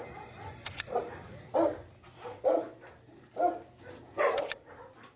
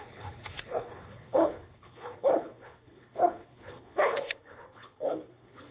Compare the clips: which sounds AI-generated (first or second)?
second